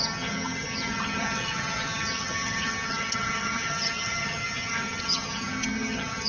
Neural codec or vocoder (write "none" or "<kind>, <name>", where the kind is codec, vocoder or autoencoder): vocoder, HiFi-GAN